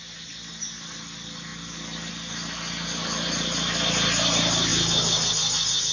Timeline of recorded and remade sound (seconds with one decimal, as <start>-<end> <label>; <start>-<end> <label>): 0.0-4.7 recorded; 4.7-5.3 remade; 5.3-5.9 recorded